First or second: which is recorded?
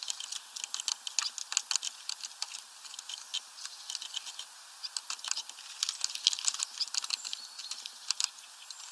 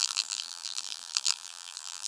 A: first